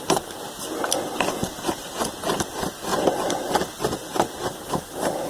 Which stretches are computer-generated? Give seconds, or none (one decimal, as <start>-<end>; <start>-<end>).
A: 1.4-2.0